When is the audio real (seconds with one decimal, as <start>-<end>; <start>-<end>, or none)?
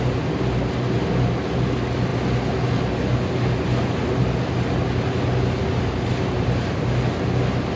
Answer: 0.0-7.8